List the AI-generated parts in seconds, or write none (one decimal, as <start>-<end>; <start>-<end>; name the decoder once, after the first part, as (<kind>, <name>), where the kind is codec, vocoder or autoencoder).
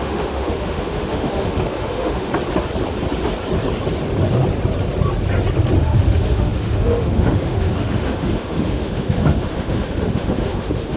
0.0-2.3 (autoencoder, DAC-VAE); 5.8-11.0